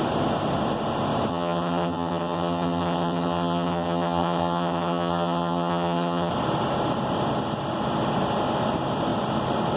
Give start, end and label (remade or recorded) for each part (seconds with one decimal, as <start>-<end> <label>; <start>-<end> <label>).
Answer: 0.0-1.3 recorded; 1.3-6.3 remade; 6.3-9.8 recorded